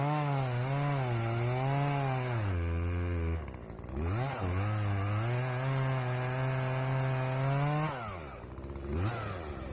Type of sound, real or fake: real